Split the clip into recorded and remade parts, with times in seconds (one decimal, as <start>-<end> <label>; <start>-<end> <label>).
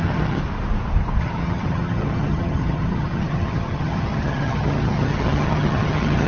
0.0-0.4 remade; 0.4-1.2 recorded; 1.2-6.3 remade